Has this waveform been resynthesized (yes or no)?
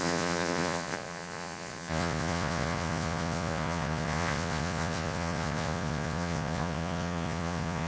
yes